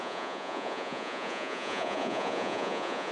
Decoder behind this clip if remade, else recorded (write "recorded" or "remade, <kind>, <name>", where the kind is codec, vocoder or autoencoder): remade, vocoder, Vocos